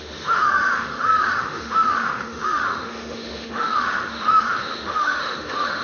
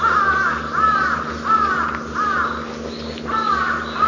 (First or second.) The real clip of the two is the second